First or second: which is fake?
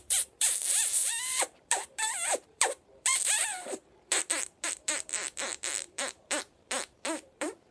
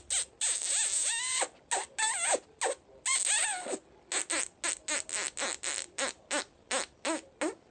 first